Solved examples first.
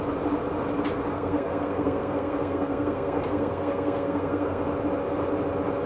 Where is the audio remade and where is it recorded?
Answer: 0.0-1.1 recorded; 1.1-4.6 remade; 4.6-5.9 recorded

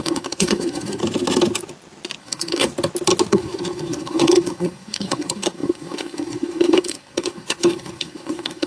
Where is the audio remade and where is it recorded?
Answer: 0.0-1.0 remade; 1.0-2.2 recorded; 2.2-2.7 remade; 2.7-3.3 recorded; 3.3-8.7 remade

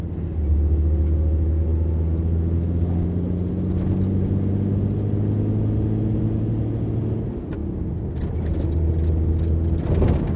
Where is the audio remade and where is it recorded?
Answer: 0.0-10.4 recorded

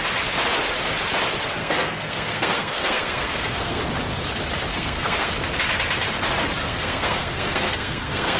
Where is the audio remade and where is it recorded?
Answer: 0.0-1.6 recorded; 1.6-3.8 remade; 3.8-4.7 recorded; 4.7-5.3 remade; 5.3-6.6 recorded; 6.6-8.4 remade

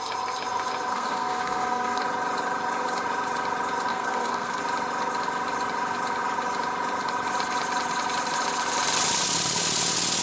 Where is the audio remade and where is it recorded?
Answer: 0.0-0.9 recorded; 0.9-2.0 remade; 2.0-3.9 recorded; 3.9-4.6 remade; 4.6-10.2 recorded

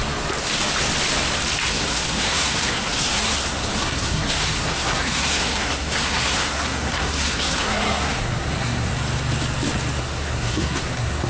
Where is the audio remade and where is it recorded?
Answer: 0.0-1.7 recorded; 1.7-8.9 remade; 8.9-10.0 recorded; 10.0-11.3 remade